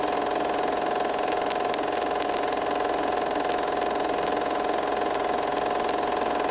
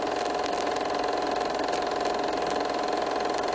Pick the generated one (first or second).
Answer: second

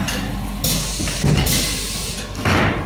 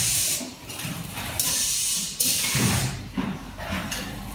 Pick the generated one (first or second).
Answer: second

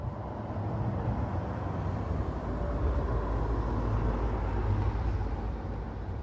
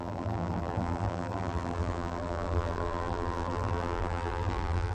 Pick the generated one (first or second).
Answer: second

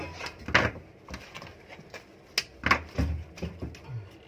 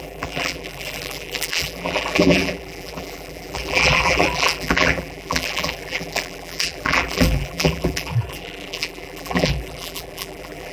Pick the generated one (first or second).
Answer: second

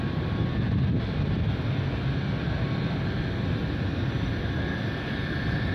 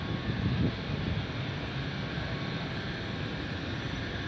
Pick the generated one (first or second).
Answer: second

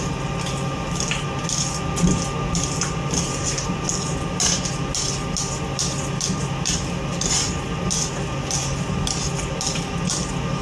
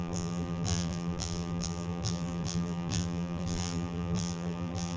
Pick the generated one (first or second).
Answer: second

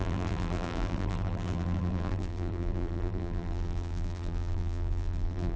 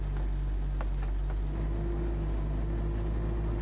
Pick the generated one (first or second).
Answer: first